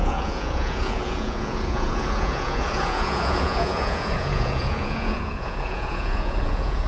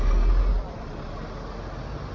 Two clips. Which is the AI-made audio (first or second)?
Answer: first